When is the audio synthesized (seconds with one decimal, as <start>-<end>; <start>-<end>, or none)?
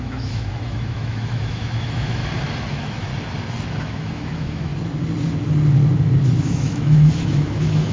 0.0-2.2; 2.7-3.1; 3.8-4.7; 6.4-7.9